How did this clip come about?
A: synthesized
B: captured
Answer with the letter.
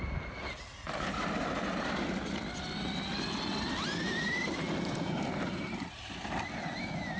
B